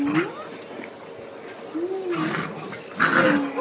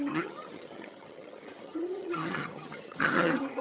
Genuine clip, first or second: first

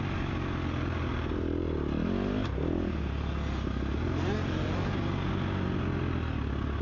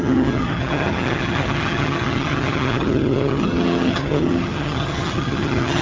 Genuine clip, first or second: first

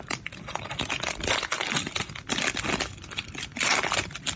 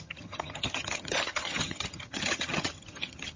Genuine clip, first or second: first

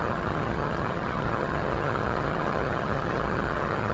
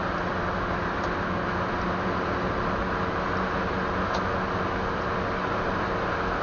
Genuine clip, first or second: second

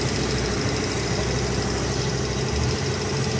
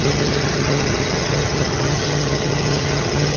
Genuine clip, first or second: first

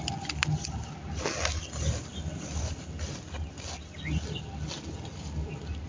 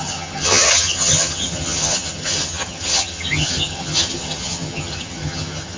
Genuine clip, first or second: first